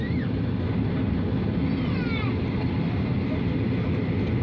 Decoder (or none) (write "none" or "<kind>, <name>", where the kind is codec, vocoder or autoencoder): none